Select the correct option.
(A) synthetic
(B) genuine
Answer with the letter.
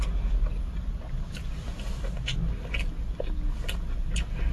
B